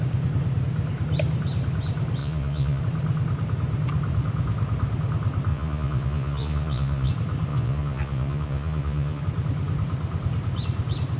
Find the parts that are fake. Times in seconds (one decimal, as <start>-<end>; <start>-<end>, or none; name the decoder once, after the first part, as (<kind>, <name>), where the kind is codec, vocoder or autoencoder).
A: 2.2-2.8 (vocoder, Vocos); 5.5-7.1; 7.5-9.2